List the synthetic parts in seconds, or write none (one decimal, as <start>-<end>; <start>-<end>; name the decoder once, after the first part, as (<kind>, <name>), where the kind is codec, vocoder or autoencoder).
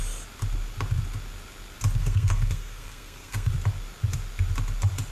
2.0-3.5 (codec, SNAC)